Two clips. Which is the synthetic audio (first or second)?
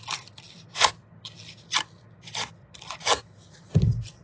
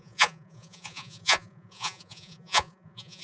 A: second